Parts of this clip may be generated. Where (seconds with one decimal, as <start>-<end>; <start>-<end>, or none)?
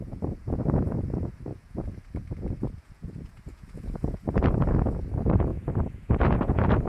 0.0-6.9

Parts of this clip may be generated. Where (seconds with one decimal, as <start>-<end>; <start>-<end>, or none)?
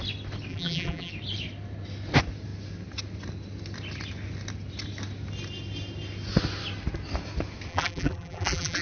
0.5-1.1; 7.7-8.8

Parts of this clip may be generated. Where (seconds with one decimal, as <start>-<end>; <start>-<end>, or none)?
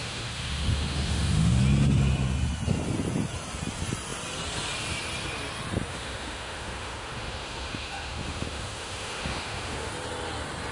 0.0-1.6; 5.9-9.9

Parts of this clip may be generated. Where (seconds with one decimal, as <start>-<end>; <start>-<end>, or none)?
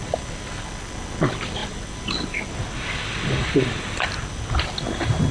none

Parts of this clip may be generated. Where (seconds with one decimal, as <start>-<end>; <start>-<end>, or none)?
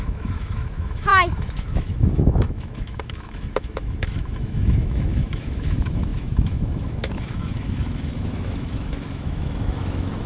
0.0-10.3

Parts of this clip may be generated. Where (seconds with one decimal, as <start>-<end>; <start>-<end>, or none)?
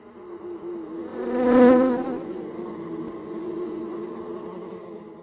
1.1-4.2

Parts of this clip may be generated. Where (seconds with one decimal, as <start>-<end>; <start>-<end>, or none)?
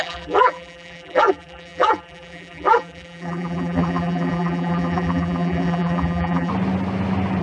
0.0-6.5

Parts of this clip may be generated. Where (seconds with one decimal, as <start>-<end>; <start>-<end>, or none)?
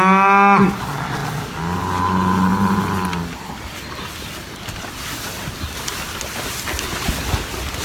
none